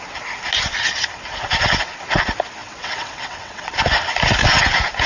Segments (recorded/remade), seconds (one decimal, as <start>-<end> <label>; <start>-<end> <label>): 0.0-2.6 recorded; 2.6-3.7 remade; 3.7-5.1 recorded